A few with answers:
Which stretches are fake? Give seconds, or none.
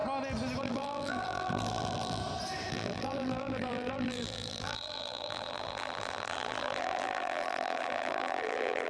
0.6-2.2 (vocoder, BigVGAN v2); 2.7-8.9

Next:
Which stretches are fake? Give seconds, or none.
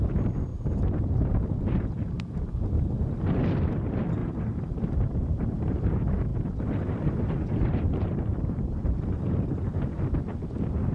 0.5-2.1 (vocoder, BigVGAN v2); 4.2-5.8; 6.3-9.9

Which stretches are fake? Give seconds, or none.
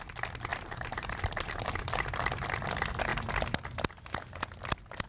0.5-1.9 (vocoder, BigVGAN v2)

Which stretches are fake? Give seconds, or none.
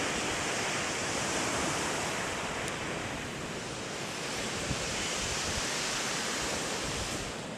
1.0-1.8 (vocoder, BigVGAN v2); 4.3-6.2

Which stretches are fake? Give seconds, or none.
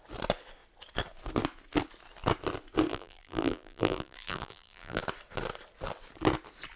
2.9-5.0 (vocoder, BigVGAN v2)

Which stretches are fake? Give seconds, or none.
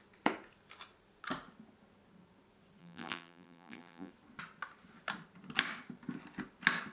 2.8-4.1 (vocoder, BigVGAN v2)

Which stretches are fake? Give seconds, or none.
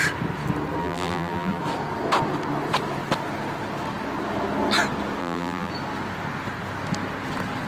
0.8-1.6 (vocoder, BigVGAN v2); 5.2-5.7